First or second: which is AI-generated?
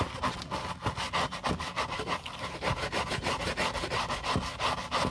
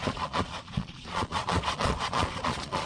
second